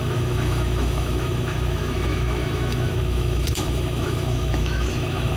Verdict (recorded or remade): remade